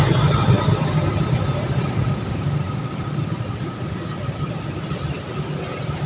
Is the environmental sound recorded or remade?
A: recorded